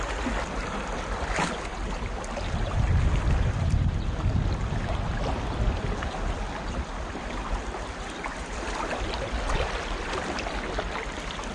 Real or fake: real